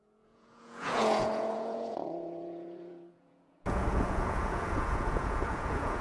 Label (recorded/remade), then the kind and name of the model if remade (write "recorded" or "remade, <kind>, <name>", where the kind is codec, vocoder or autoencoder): remade, vocoder, Vocos